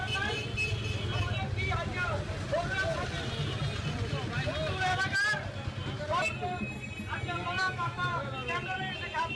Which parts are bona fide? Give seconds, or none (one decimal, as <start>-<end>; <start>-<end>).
0.0-7.6; 8.3-9.4

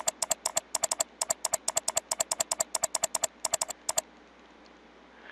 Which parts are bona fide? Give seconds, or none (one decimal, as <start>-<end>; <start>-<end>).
0.0-5.3